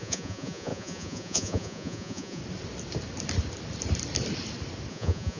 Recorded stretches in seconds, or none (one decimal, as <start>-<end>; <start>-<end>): 2.4-4.9